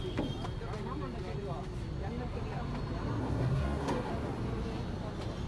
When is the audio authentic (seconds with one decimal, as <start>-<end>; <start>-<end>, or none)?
0.0-3.2; 4.1-5.5